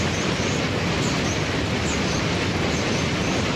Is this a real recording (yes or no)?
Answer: yes